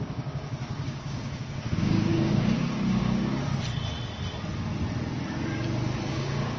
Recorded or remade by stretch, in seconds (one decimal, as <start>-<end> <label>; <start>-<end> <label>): 0.0-3.5 remade; 3.5-6.1 recorded; 6.1-6.6 remade